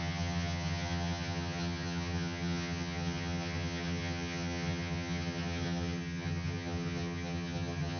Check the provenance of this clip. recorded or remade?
remade